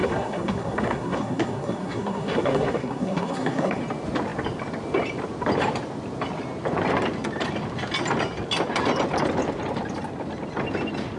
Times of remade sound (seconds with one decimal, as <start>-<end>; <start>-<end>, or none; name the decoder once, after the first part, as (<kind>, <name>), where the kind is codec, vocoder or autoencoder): 0.0-3.8 (codec, SNAC)